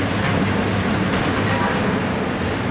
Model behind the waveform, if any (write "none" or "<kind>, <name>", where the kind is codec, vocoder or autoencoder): none